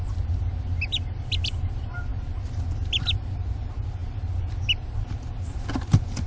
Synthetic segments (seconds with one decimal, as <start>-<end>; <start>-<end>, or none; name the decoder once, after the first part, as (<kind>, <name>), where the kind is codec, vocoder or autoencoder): none